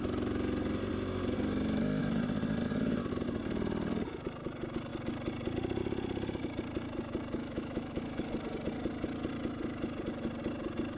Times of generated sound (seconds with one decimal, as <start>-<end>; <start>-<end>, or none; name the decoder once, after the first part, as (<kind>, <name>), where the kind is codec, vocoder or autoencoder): 7.4-8.3 (autoencoder, DAC-VAE)